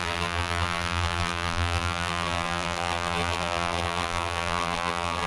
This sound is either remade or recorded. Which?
remade